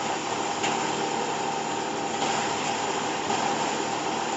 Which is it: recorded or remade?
recorded